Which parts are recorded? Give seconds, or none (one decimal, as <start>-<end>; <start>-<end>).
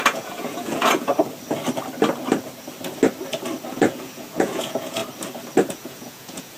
1.1-3.7; 5.0-5.7